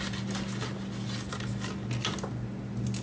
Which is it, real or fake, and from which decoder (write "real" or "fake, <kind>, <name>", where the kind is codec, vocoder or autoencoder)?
real